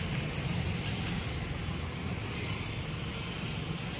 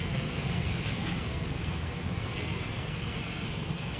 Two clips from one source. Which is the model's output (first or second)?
second